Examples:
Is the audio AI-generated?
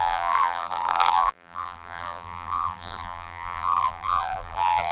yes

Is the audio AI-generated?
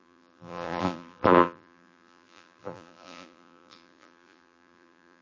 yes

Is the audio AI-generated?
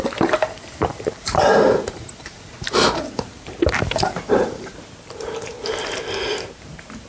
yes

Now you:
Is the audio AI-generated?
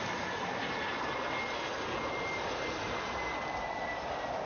no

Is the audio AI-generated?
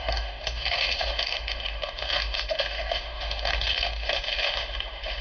yes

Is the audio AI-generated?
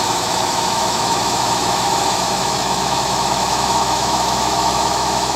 yes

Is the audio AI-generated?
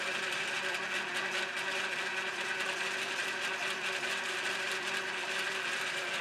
no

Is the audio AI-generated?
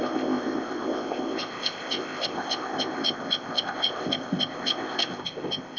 yes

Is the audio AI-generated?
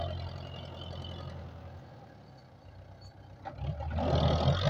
no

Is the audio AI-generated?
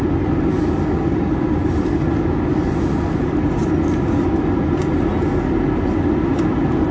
no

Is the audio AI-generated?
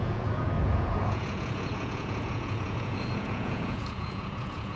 yes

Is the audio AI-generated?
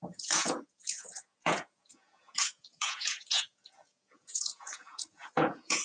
yes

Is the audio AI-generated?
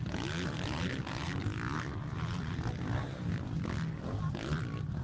no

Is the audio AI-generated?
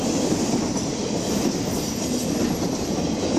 no